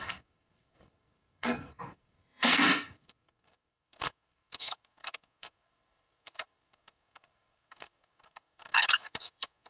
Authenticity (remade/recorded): remade